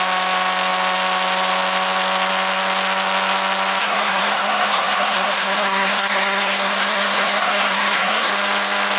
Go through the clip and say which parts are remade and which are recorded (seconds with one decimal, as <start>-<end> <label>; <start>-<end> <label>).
0.0-3.8 recorded; 3.8-8.3 remade; 8.3-9.0 recorded